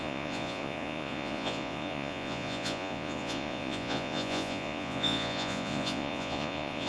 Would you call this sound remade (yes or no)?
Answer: yes